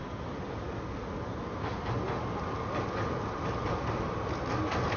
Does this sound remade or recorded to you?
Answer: recorded